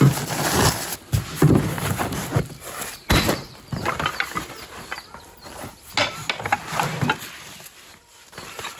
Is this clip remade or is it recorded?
recorded